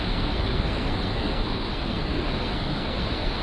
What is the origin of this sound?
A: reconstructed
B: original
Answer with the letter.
A